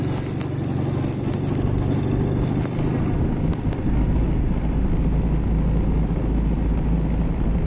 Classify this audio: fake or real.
real